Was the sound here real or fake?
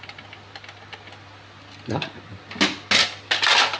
real